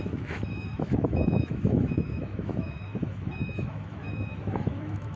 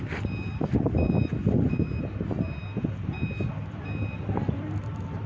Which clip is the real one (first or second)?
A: second